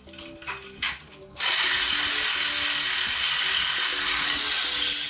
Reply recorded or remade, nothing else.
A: recorded